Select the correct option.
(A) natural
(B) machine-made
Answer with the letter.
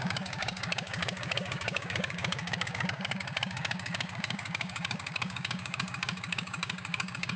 B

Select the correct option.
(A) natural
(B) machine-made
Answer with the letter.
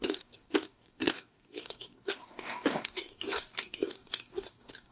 B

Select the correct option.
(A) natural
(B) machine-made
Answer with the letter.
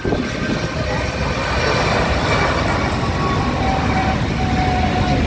A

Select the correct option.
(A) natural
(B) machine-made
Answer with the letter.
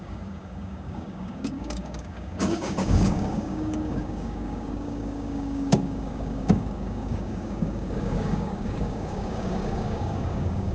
B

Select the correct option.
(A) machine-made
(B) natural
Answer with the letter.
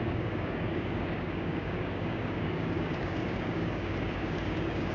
A